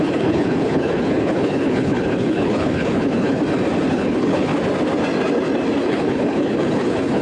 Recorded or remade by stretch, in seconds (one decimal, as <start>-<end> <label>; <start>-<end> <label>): 0.0-3.4 remade; 3.4-3.9 recorded; 3.9-4.5 remade; 4.5-5.9 recorded; 5.9-7.2 remade